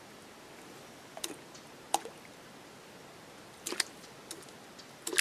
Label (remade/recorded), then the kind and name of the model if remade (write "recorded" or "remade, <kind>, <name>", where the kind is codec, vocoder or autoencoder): recorded